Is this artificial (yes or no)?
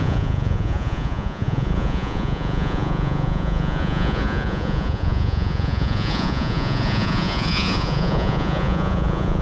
yes